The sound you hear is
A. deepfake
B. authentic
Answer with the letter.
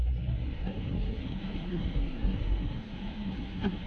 A